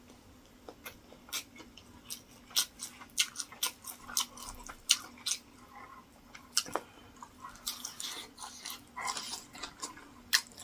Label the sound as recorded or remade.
recorded